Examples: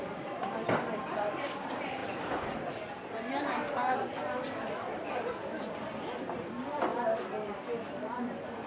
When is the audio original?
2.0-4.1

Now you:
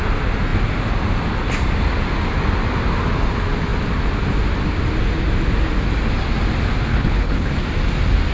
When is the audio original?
0.0-6.9; 7.5-8.3